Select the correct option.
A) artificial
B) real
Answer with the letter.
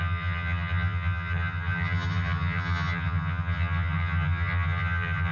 A